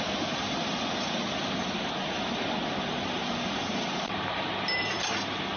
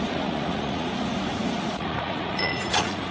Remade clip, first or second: second